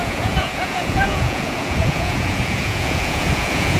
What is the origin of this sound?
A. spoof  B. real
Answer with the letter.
A